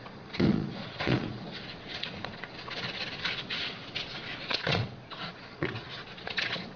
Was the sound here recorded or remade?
remade